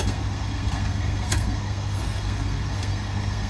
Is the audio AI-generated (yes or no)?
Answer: yes